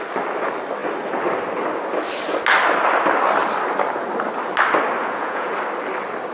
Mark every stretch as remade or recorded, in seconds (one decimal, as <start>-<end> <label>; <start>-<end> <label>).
0.0-5.0 recorded; 5.0-5.5 remade; 5.5-6.3 recorded